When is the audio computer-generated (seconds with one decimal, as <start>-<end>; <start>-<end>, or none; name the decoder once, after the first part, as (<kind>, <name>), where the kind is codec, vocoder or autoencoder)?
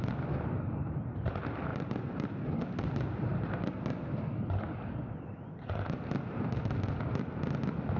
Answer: 1.7-2.6 (vocoder, BigVGAN v2)